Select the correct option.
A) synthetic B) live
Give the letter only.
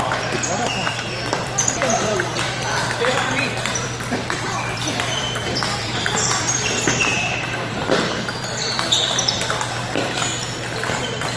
A